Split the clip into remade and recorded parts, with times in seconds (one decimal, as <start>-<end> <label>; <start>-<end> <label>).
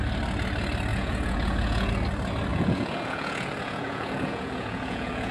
0.0-0.9 recorded; 0.9-1.9 remade; 1.9-2.5 recorded; 2.5-5.3 remade